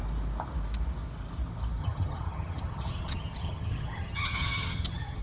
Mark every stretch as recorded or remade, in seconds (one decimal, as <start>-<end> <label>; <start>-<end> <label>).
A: 0.0-1.8 recorded; 1.8-5.2 remade